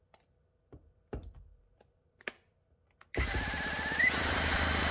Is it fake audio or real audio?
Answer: fake